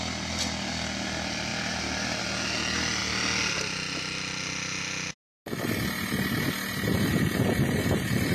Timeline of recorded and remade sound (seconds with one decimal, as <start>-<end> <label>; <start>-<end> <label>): 0.0-8.3 recorded